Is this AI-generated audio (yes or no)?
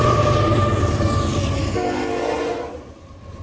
no